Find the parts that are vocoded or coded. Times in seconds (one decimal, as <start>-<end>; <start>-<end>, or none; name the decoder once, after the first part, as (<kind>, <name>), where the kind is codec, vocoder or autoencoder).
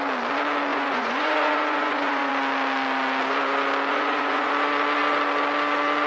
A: 0.7-2.3 (vocoder, Vocos); 3.9-4.5